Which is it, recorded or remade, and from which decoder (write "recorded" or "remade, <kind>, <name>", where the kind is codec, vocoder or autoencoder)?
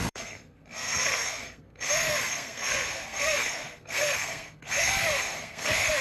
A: remade, codec, SNAC